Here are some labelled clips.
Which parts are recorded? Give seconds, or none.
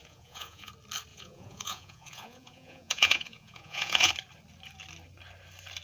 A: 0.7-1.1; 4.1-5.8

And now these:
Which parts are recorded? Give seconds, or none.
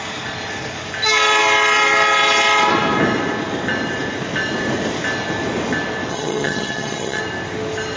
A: 0.0-6.1; 7.2-8.0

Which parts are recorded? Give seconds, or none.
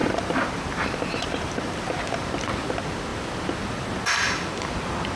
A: 2.3-5.2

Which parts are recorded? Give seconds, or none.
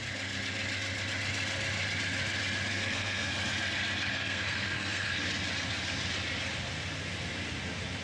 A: 0.0-2.7; 3.3-4.1; 5.1-8.0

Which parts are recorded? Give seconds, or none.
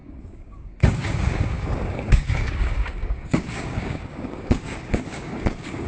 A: none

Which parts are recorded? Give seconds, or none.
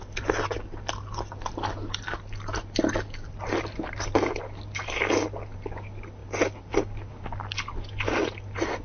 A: 0.0-8.8